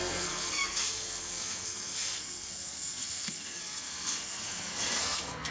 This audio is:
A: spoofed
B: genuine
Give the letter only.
A